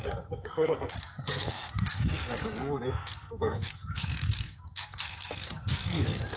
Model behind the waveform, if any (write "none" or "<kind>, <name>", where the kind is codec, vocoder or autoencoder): codec, SNAC